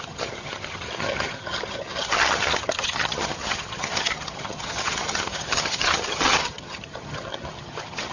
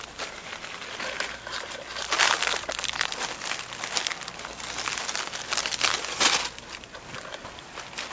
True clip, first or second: second